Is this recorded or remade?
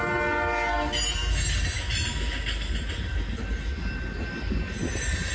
recorded